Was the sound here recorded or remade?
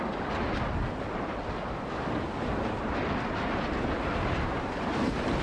recorded